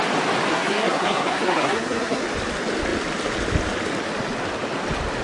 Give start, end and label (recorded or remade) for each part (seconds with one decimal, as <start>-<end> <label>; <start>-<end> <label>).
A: 0.0-0.5 recorded; 0.5-2.2 remade; 2.2-5.2 recorded